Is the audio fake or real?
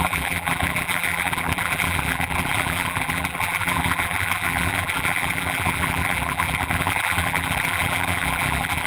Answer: fake